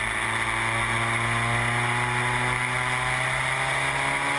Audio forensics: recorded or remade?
recorded